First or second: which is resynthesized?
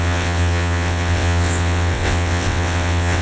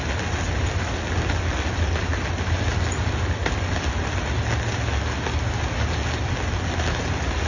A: first